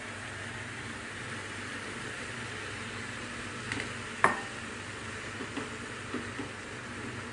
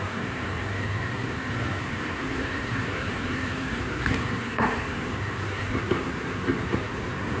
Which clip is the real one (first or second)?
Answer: first